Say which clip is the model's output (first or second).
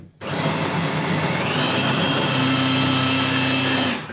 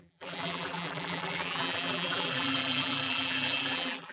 second